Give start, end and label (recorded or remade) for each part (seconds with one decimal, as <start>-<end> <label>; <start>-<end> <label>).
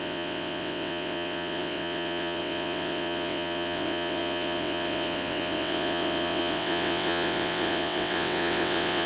0.0-9.1 remade